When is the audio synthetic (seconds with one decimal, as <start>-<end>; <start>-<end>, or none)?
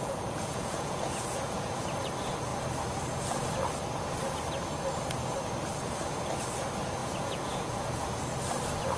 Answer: 0.0-1.8; 7.0-8.2